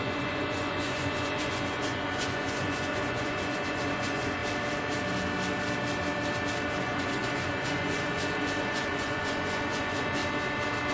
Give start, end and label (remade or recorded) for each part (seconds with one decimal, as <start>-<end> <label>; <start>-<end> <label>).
0.0-4.4 remade; 4.4-6.7 recorded; 6.7-10.2 remade; 10.2-10.9 recorded